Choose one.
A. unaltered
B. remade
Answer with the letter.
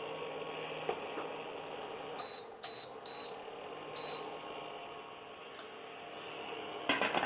A